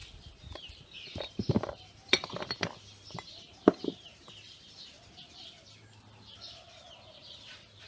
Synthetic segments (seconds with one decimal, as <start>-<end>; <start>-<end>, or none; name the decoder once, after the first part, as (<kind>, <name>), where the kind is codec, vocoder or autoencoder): none